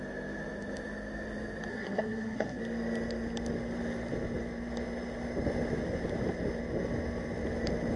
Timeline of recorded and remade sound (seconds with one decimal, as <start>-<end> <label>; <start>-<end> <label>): 0.0-1.7 recorded; 1.7-2.6 remade; 2.6-8.0 recorded

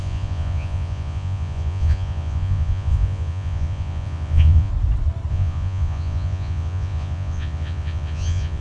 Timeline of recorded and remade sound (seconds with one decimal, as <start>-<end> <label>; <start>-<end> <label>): 0.0-4.7 remade; 4.7-5.3 recorded; 5.3-8.6 remade

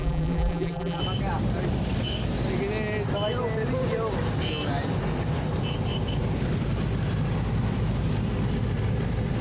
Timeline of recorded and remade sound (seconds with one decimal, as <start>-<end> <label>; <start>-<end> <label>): 0.0-1.0 remade; 1.0-9.4 recorded

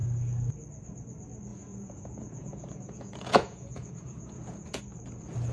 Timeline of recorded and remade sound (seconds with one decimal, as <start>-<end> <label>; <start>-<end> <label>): 0.0-1.5 recorded; 1.5-4.8 remade; 4.8-5.5 recorded